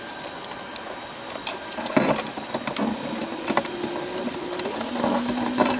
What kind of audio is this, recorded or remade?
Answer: recorded